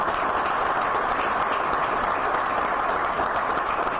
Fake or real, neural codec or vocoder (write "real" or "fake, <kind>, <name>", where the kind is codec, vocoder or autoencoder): real